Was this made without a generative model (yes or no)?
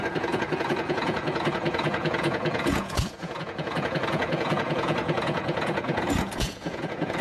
no